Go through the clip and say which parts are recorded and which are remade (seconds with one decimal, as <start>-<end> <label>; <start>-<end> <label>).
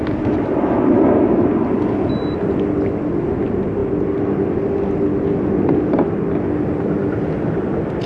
0.0-8.1 recorded